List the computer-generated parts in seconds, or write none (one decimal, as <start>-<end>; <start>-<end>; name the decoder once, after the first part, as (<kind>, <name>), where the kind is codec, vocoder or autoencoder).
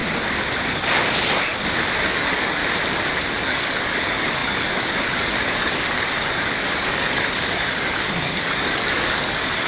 2.0-2.6 (codec, DAC); 3.4-9.7